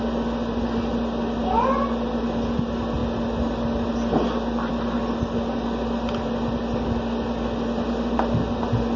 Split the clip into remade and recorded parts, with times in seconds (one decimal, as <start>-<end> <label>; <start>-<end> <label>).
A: 0.0-9.0 recorded